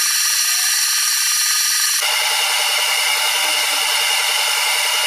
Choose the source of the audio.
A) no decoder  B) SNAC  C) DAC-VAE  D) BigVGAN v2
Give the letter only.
A